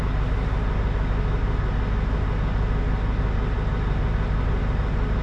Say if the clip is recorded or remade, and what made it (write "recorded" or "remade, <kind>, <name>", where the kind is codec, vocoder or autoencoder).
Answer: recorded